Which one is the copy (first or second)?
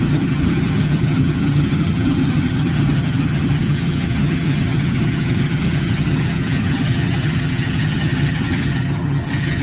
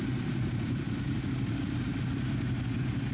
first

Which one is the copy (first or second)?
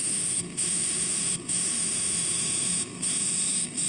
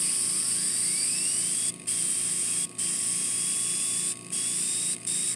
first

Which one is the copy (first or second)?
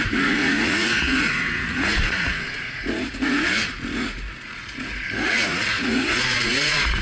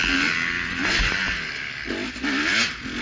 first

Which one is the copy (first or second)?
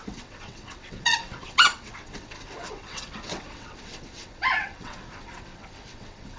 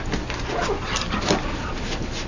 first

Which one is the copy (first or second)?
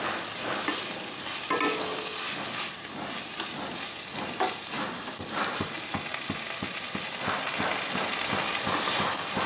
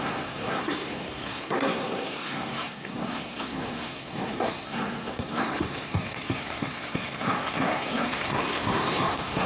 second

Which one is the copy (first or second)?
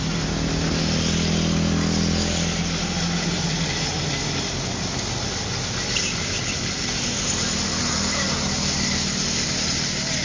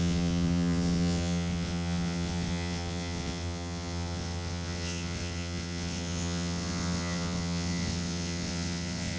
second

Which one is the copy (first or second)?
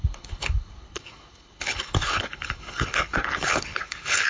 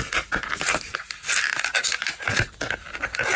first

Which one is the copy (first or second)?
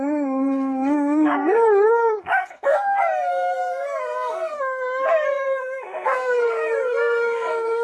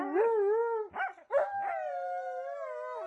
first